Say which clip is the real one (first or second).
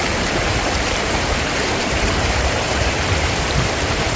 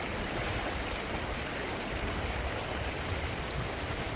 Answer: second